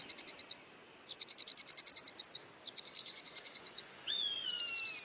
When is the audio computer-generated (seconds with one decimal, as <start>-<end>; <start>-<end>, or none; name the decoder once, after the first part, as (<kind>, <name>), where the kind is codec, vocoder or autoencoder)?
3.0-4.6 (vocoder, Vocos)